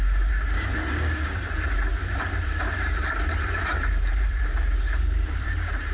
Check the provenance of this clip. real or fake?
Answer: fake